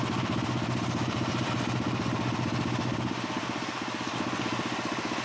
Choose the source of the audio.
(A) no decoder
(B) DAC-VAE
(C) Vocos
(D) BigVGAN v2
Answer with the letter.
A